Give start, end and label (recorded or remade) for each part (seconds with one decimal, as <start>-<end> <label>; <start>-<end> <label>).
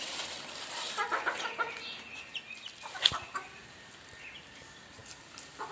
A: 0.0-5.0 remade; 5.0-5.7 recorded